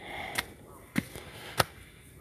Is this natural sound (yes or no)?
yes